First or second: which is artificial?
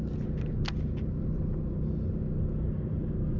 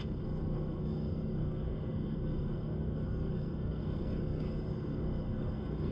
second